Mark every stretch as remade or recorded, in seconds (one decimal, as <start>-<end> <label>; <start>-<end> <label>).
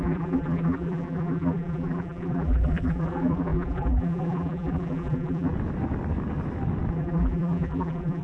0.0-5.5 remade; 5.5-6.9 recorded; 6.9-8.2 remade